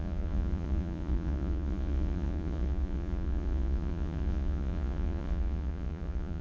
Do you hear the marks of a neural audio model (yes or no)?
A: yes